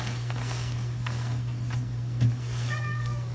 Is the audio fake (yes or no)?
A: yes